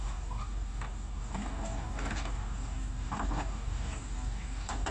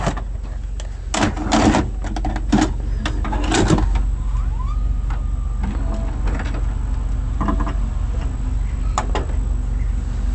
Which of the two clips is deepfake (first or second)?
first